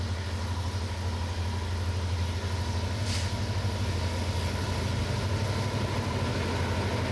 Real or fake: real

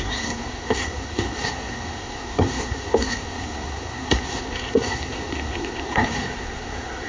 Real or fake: fake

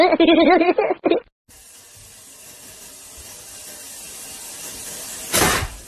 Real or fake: real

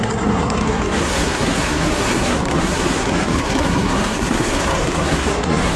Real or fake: fake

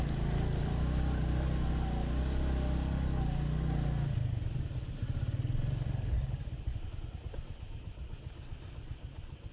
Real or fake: real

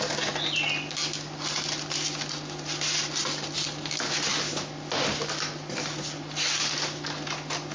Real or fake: real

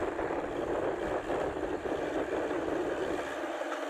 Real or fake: real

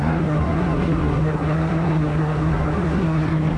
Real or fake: fake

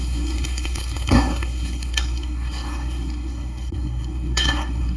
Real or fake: fake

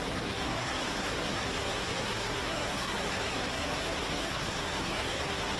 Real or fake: fake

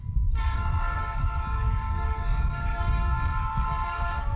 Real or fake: fake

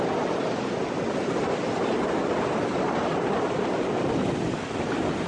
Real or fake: real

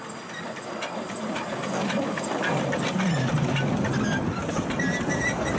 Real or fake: real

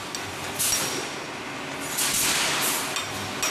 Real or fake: real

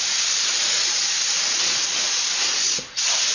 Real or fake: real